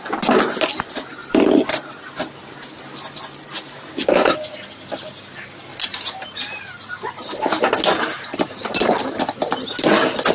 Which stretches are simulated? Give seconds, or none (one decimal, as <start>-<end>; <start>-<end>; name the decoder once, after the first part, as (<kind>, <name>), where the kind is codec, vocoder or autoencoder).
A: 1.2-2.0 (vocoder, BigVGAN v2); 5.7-7.5